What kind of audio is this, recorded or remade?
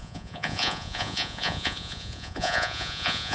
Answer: remade